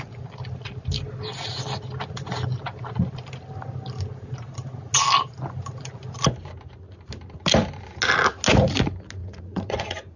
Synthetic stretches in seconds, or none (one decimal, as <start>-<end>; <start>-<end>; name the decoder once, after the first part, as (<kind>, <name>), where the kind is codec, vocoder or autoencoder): 9.2-10.2 (vocoder, Vocos)